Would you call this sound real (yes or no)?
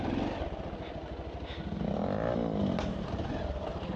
yes